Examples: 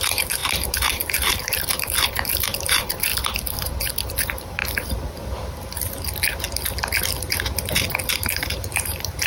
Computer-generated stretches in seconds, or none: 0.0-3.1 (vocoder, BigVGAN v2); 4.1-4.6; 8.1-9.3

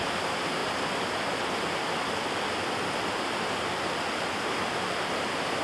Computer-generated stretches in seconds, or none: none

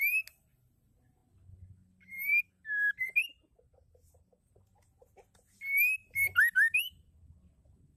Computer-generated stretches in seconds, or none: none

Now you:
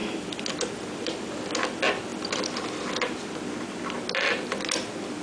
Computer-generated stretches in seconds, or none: 0.0-1.5 (vocoder, BigVGAN v2); 2.1-3.3